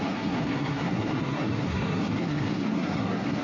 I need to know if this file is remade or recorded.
remade